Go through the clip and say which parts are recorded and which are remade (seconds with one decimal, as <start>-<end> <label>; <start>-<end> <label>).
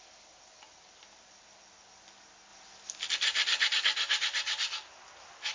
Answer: 0.0-5.5 recorded